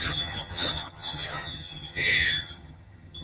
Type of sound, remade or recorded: remade